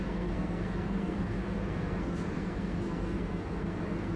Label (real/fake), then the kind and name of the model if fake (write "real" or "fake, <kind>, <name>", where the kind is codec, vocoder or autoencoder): fake, codec, SNAC